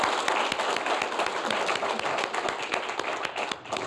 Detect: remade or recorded recorded